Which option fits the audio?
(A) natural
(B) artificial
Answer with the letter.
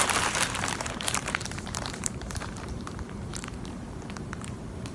B